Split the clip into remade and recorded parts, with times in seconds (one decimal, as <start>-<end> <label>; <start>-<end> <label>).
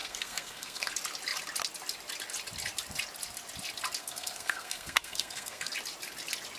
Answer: 0.0-0.9 remade; 0.9-4.0 recorded; 4.0-5.7 remade; 5.7-6.6 recorded